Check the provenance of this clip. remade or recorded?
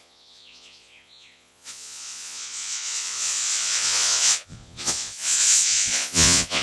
remade